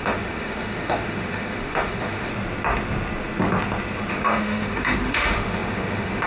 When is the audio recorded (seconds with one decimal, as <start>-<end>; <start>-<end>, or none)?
2.3-4.1